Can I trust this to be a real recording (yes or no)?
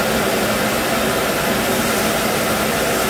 yes